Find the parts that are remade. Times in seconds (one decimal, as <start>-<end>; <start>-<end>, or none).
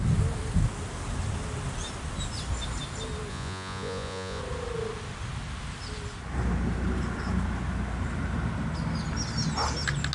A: 3.3-4.4